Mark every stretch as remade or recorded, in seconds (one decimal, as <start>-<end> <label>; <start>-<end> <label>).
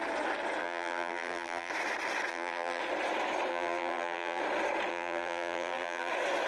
0.0-0.6 recorded; 0.6-1.7 remade; 1.7-2.3 recorded; 2.3-2.8 remade; 2.8-3.5 recorded; 3.5-4.4 remade; 4.4-4.9 recorded; 4.9-6.1 remade; 6.1-6.5 recorded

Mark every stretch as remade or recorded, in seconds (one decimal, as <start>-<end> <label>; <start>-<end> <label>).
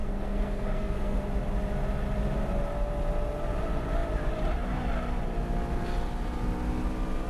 0.0-1.2 remade; 1.2-7.3 recorded